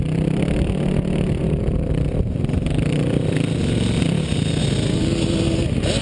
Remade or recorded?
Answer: recorded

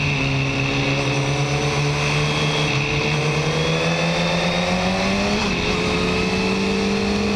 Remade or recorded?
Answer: recorded